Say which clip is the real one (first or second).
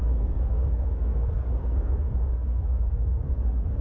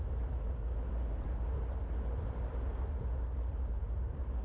second